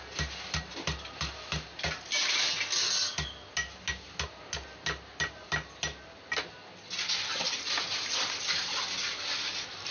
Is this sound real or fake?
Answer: real